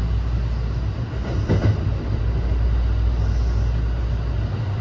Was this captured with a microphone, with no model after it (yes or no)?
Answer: yes